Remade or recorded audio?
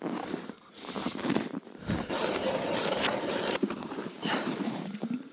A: remade